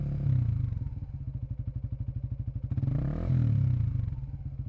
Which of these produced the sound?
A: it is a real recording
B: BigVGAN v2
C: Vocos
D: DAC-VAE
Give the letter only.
A